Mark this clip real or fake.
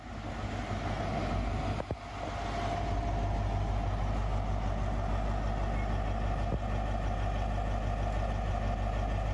real